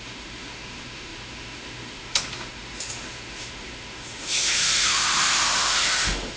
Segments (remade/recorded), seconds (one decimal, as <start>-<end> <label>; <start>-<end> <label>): 0.0-6.4 remade